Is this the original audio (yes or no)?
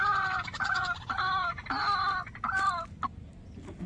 yes